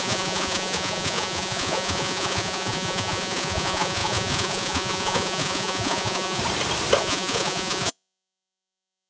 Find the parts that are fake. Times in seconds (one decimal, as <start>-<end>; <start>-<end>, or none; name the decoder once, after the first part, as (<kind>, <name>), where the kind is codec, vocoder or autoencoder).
0.0-6.4 (vocoder, Vocos); 7.0-9.1